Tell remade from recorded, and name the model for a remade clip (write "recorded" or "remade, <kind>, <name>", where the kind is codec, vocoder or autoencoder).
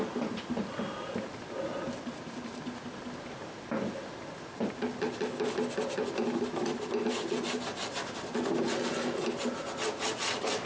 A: recorded